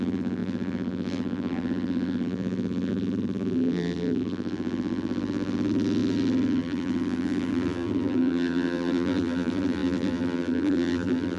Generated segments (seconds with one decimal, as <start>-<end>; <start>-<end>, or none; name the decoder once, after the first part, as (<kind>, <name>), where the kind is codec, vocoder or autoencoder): 0.0-11.4 (vocoder, BigVGAN v2)

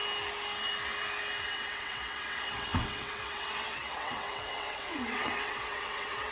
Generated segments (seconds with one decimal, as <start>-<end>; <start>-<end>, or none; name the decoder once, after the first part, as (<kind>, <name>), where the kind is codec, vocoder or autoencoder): 1.4-6.3 (vocoder, WaveNeXt)

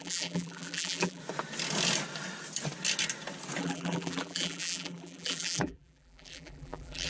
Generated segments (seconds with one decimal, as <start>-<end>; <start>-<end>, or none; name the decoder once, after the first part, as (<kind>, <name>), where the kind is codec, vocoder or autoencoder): 0.0-1.2 (vocoder, BigVGAN v2); 3.6-7.1

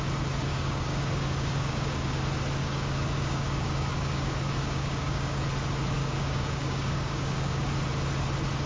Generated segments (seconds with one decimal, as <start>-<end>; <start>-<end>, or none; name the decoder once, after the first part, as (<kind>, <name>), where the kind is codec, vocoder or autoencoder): 0.5-2.2 (codec, DAC); 2.6-5.4; 6.0-7.7

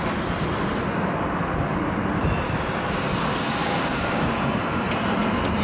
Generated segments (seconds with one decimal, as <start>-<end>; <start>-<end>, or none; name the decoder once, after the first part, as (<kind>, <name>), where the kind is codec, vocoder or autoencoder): 3.6-4.3 (codec, DAC)

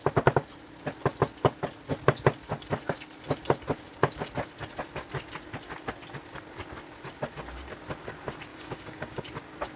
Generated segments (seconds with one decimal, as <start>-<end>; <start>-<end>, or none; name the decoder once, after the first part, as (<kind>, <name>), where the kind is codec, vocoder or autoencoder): 8.5-9.2 (codec, DAC)